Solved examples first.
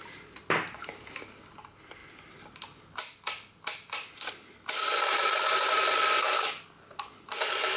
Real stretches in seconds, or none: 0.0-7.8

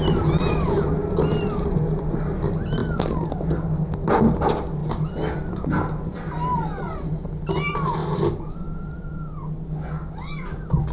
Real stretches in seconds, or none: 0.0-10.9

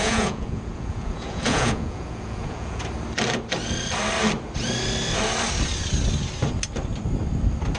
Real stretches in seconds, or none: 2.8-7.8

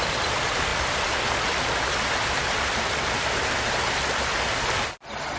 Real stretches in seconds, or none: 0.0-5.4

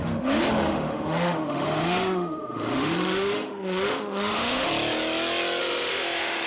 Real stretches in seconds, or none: 4.7-5.6

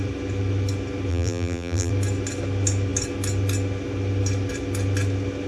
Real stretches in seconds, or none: 0.0-1.1; 1.9-5.5

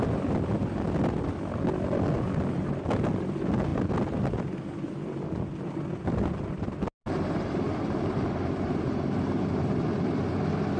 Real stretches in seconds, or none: 0.0-10.8